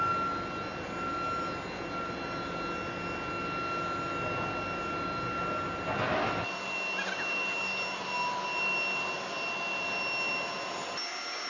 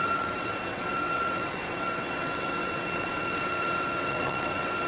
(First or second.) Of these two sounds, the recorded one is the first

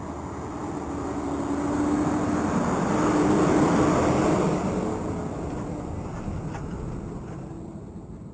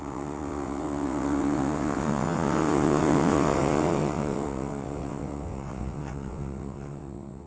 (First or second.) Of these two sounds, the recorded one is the first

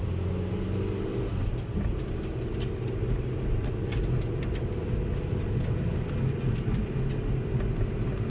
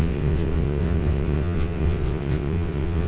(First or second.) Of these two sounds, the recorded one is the first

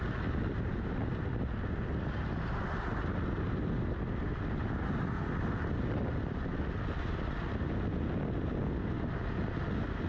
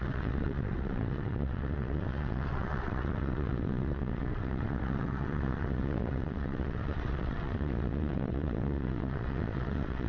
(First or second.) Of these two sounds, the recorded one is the first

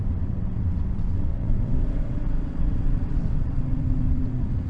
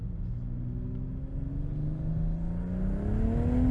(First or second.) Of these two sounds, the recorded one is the second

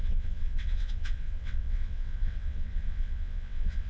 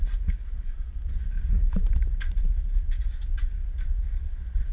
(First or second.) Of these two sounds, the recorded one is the second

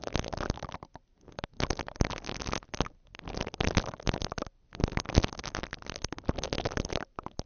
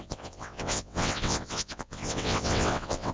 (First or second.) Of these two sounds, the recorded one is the first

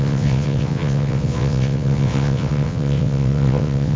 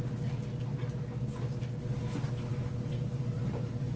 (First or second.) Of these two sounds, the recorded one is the second